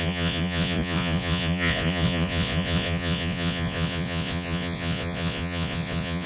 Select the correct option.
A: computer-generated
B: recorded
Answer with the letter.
A